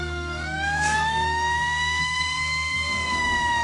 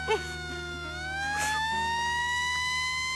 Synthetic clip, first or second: first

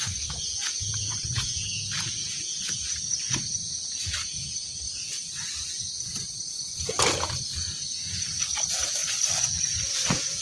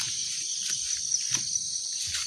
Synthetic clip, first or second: first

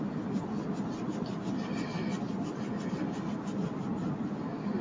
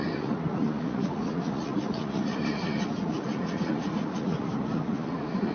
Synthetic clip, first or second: second